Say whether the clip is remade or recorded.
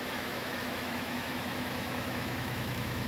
remade